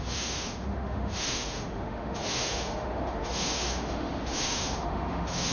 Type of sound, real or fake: fake